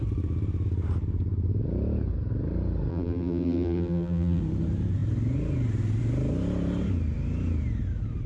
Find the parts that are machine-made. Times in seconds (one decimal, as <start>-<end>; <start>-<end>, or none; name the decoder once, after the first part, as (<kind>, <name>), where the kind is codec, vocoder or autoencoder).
2.9-4.4 (vocoder, BigVGAN v2)